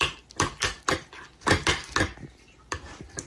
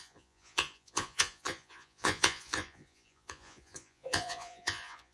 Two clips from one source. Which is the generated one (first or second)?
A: second